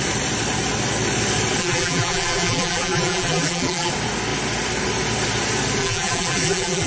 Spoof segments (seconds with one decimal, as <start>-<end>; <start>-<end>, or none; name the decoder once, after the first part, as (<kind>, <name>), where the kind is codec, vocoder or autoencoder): 1.6-3.9 (vocoder, BigVGAN v2); 5.8-6.9